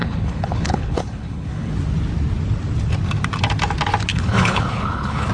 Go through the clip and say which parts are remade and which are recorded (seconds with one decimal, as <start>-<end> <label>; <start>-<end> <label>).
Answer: 0.0-1.7 remade; 1.7-4.1 recorded; 4.1-5.3 remade